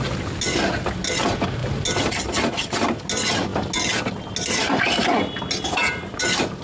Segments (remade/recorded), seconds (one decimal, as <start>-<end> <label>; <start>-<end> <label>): 0.0-5.8 recorded; 5.8-6.6 remade

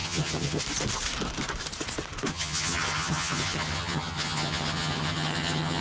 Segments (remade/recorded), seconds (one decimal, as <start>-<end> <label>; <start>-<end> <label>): 0.0-0.6 remade; 0.6-2.3 recorded; 2.3-5.8 remade

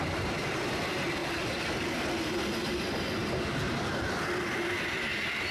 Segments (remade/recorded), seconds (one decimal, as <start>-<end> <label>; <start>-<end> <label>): 0.0-3.2 remade; 3.2-3.9 recorded; 3.9-5.5 remade

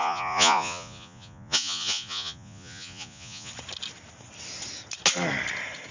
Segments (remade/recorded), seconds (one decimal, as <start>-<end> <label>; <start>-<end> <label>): 0.0-3.5 remade; 3.5-5.9 recorded

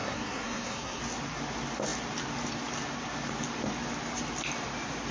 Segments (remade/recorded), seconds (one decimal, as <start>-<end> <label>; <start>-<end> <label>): 0.0-1.0 remade; 1.0-5.1 recorded